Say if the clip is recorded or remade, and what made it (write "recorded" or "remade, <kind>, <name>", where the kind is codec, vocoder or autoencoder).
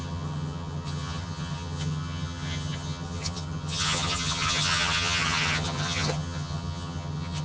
remade, vocoder, HiFi-GAN